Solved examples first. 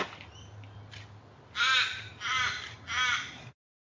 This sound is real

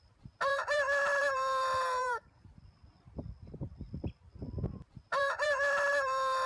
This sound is fake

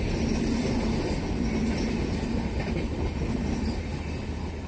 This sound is real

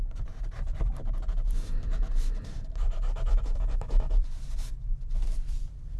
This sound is fake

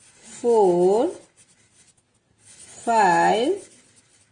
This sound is real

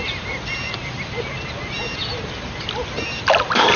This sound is real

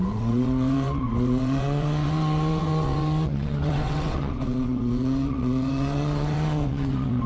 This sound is fake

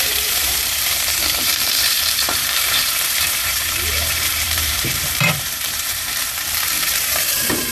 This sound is fake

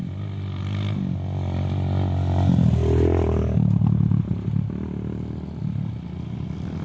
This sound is real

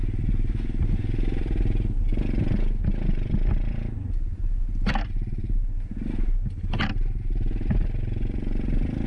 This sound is real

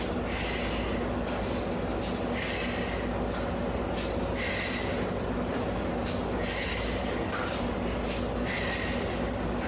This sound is real